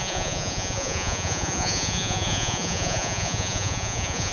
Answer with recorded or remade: remade